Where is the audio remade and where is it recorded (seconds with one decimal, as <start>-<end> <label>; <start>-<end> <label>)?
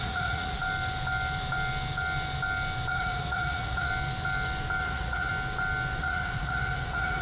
0.0-0.6 remade; 0.6-2.9 recorded; 2.9-3.9 remade; 3.9-4.8 recorded; 4.8-5.3 remade; 5.3-6.0 recorded; 6.0-7.2 remade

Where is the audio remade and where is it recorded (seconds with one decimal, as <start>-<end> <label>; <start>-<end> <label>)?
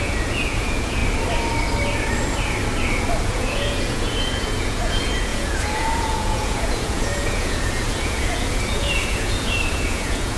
0.0-1.0 remade; 1.0-3.2 recorded; 3.2-10.4 remade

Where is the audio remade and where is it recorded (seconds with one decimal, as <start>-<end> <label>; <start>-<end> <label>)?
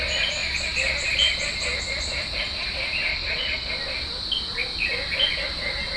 0.0-3.1 recorded; 3.1-3.7 remade; 3.7-6.0 recorded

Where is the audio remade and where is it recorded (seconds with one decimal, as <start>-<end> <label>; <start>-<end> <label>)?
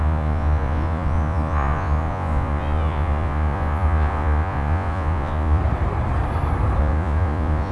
0.0-5.6 remade; 5.6-6.8 recorded; 6.8-7.7 remade